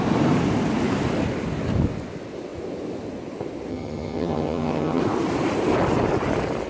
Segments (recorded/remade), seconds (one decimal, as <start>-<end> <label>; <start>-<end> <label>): 0.0-3.7 recorded; 3.7-5.0 remade; 5.0-6.7 recorded